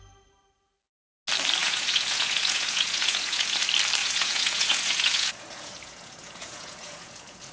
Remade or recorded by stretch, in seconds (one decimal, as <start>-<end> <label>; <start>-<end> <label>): 0.0-1.6 recorded; 1.6-3.6 remade; 3.6-4.0 recorded; 4.0-7.5 remade

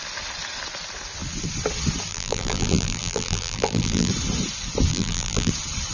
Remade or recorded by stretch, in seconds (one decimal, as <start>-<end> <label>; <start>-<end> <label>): 0.0-2.1 recorded; 2.1-4.1 remade; 4.1-4.9 recorded; 4.9-5.5 remade; 5.5-5.9 recorded

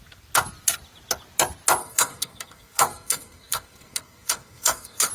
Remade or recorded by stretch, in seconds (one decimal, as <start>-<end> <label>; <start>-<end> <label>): 0.0-1.8 recorded; 1.8-5.1 remade

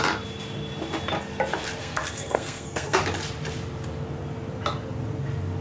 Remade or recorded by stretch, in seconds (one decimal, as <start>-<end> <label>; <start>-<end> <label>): 0.0-1.8 recorded; 1.8-3.0 remade; 3.0-5.6 recorded

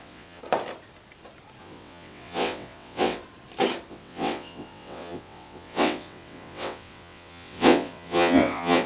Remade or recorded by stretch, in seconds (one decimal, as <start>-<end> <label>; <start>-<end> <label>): 0.0-0.4 remade; 0.4-1.6 recorded; 1.6-3.2 remade; 3.2-3.9 recorded; 3.9-8.9 remade

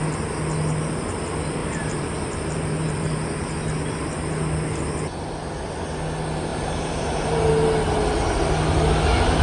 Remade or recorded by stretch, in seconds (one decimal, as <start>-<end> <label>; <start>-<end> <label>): 0.0-1.6 recorded; 1.6-3.0 remade; 3.0-6.5 recorded; 6.5-7.5 remade; 7.5-9.4 recorded